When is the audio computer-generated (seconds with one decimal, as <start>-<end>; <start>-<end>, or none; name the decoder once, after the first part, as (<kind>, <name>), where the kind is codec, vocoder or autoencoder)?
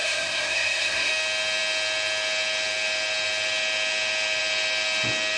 0.0-1.1 (codec, SNAC)